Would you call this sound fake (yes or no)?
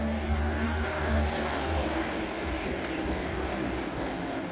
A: yes